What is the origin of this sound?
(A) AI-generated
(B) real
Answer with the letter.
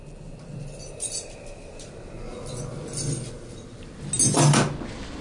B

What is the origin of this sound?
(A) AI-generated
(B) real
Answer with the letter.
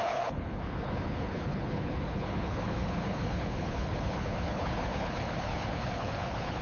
A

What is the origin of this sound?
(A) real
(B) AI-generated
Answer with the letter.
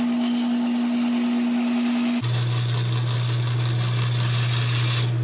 A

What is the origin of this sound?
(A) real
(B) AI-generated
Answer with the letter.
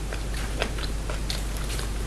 A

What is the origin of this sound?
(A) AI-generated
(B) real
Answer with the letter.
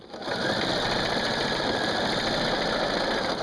B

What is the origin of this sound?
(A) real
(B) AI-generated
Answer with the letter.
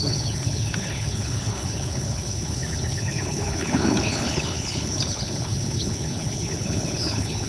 B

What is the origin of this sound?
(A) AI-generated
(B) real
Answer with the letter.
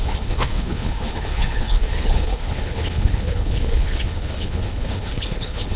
A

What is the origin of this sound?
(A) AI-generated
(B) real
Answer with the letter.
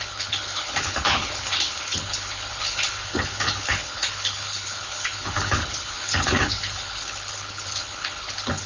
A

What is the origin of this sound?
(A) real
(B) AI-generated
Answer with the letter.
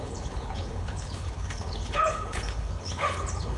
B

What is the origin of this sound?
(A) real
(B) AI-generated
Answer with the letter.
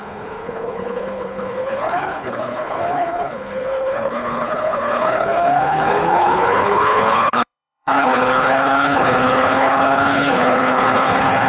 B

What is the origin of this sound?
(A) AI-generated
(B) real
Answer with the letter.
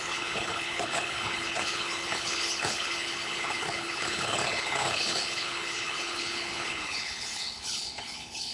A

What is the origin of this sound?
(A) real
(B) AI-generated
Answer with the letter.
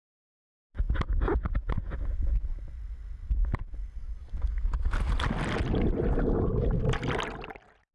A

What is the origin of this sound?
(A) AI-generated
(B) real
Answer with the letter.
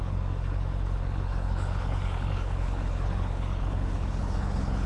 A